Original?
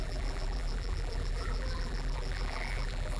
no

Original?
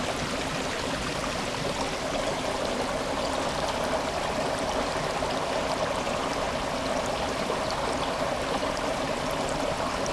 yes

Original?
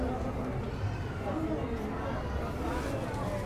yes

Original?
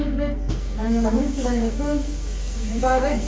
no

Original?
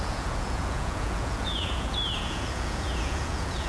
no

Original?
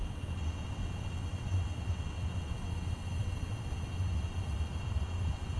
no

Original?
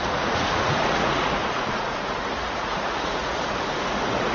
no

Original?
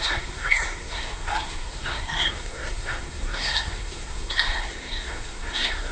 no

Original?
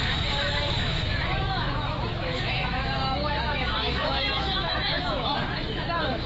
no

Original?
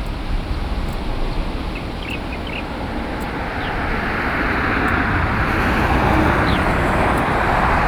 yes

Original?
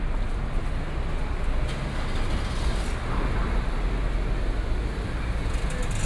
yes